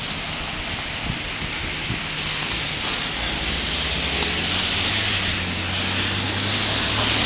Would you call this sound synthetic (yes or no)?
no